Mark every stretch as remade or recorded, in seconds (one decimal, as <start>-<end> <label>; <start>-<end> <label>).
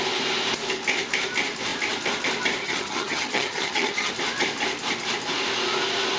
0.0-2.6 recorded; 2.6-4.1 remade; 4.1-6.2 recorded